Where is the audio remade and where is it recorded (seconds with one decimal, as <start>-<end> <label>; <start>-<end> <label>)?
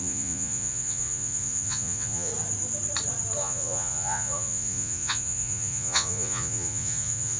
0.0-2.3 remade; 2.3-3.4 recorded; 3.4-7.4 remade